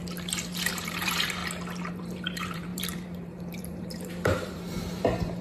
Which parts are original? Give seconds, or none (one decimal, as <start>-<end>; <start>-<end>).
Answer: 0.0-0.7; 1.4-1.9